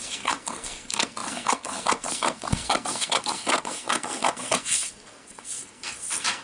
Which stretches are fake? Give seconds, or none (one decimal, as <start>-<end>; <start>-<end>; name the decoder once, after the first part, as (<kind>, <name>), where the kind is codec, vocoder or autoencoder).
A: 0.0-6.4 (codec, SNAC)